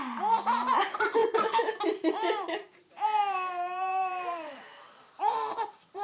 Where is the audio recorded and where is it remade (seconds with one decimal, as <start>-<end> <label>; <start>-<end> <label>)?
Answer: 0.0-6.0 remade

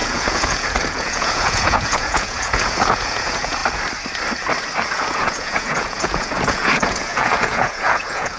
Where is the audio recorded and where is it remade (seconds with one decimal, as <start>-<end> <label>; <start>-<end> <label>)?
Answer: 0.0-3.6 remade; 3.6-4.9 recorded; 4.9-8.4 remade

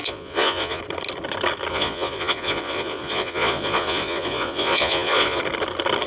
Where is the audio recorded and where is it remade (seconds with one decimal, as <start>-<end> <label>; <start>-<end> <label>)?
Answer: 0.0-0.8 remade; 0.8-1.7 recorded; 1.7-5.4 remade; 5.4-6.1 recorded